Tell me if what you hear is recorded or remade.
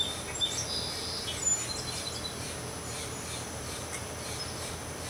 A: recorded